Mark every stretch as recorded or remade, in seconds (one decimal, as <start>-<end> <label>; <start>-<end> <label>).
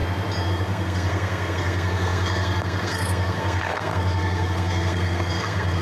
0.0-0.5 recorded; 0.5-5.8 remade